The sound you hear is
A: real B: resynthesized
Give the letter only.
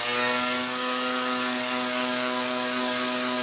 B